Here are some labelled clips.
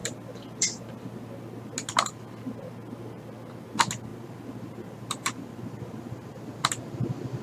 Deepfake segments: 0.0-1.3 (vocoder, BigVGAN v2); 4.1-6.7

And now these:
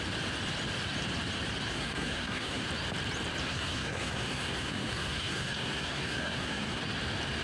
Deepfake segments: 1.7-2.7 (codec, SNAC); 3.4-6.8

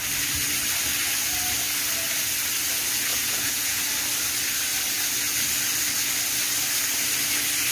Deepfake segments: 3.1-3.8 (vocoder, Vocos)

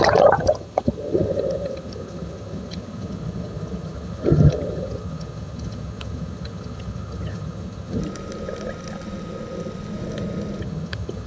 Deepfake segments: 0.0-8.0 (vocoder, HiFi-GAN); 10.6-11.3